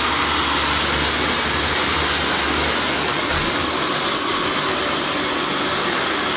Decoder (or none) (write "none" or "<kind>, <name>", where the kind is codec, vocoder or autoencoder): none